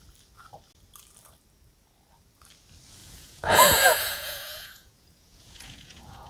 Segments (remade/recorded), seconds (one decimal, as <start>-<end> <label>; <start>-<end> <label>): 0.0-3.0 recorded; 3.0-6.3 remade